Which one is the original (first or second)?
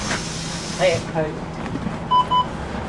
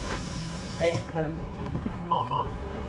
first